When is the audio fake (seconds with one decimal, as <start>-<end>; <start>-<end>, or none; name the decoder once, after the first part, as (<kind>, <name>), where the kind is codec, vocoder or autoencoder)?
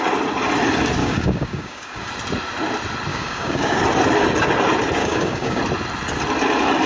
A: 1.0-2.1 (codec, DAC); 3.1-3.8; 5.0-5.6